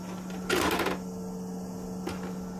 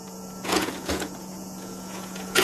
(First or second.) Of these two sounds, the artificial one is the second